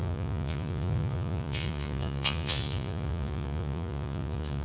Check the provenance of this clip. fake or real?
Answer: fake